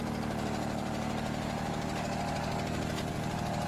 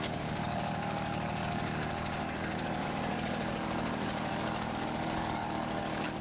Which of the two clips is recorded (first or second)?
first